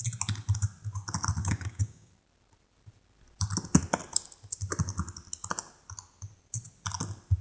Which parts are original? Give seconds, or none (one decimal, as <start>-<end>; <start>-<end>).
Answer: 0.0-1.4; 2.1-7.4